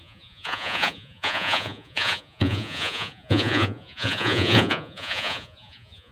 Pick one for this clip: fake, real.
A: fake